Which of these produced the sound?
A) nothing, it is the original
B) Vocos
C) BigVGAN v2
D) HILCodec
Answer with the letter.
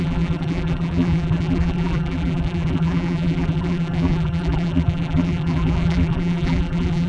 C